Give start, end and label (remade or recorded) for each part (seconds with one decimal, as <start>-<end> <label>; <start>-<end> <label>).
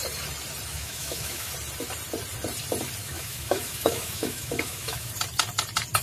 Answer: 0.0-0.7 recorded; 0.7-1.5 remade; 1.5-3.0 recorded; 3.0-5.1 remade; 5.1-6.0 recorded